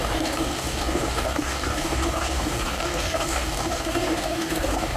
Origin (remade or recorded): remade